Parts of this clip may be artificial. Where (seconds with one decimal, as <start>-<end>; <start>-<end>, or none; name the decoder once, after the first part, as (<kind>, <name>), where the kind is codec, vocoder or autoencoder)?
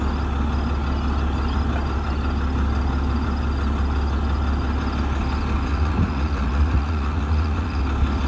5.7-7.8 (vocoder, Vocos)